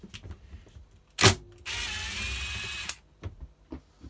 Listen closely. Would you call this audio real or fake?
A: real